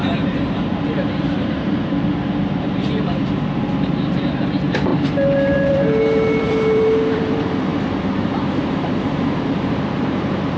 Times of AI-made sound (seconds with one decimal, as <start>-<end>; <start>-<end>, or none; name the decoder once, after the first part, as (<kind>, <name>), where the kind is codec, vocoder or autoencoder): 0.0-10.6 (vocoder, BigVGAN v2)